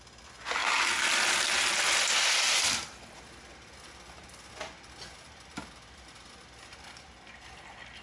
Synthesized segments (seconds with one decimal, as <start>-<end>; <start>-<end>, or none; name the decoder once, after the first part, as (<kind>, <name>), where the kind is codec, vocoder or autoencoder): none